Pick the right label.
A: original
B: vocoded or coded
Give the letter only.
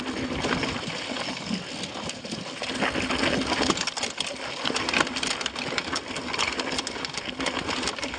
A